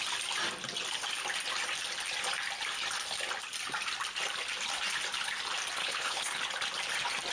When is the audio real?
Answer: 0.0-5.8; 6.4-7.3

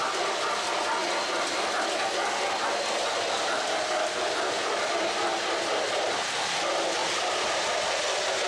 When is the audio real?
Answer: 0.0-8.5

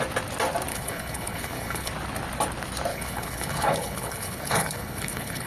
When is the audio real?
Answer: 0.0-0.7; 1.9-2.9

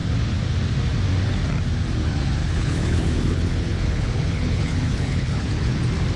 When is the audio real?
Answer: 0.0-2.4; 5.8-6.2

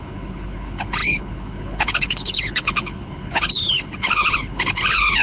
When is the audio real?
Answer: none

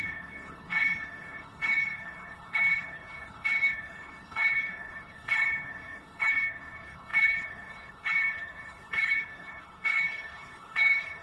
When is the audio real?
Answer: none